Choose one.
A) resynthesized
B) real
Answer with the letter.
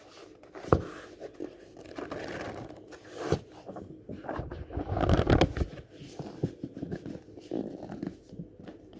B